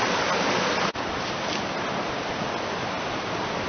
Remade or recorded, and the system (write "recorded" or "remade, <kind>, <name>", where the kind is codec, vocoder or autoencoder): recorded